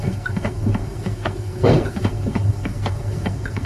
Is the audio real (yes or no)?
no